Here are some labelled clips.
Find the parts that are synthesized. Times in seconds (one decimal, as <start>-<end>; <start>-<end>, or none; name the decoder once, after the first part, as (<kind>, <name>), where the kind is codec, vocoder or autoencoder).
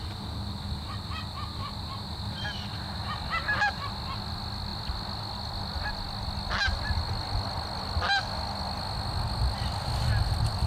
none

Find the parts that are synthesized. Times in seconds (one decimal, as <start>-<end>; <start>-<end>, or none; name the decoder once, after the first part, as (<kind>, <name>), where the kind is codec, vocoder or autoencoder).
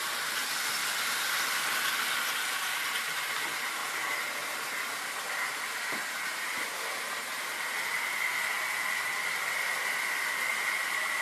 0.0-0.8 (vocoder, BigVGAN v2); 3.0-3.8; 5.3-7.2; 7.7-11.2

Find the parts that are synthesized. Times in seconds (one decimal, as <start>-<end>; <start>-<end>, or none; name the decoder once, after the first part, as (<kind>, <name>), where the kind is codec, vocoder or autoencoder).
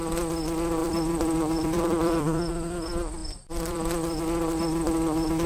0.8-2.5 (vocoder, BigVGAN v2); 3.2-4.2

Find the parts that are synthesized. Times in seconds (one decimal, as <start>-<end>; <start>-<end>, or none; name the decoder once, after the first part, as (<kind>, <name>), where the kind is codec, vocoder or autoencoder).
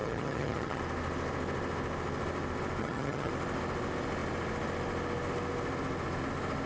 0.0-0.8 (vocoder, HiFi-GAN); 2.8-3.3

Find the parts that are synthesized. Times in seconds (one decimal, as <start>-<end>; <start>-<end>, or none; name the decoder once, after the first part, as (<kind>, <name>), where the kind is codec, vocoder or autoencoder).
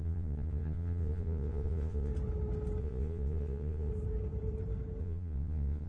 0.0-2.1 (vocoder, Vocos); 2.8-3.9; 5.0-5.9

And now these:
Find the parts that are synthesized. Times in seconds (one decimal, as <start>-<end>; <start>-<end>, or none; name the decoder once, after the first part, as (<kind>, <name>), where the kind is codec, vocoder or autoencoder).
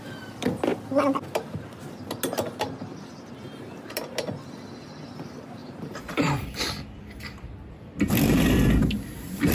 5.6-6.6 (vocoder, BigVGAN v2)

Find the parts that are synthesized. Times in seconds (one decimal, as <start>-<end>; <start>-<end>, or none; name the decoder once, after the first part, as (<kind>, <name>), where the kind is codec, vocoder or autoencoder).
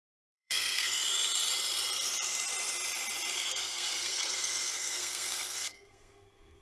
0.0-1.0 (codec, SNAC); 3.4-6.6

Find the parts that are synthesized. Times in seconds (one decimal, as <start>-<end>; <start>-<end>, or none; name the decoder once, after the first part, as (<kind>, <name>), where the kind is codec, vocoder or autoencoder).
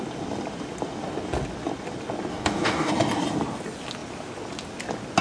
2.3-2.9 (codec, DAC)